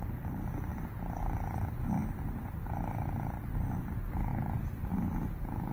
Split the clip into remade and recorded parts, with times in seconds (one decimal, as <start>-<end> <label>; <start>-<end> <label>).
0.0-4.3 recorded; 4.3-5.0 remade; 5.0-5.7 recorded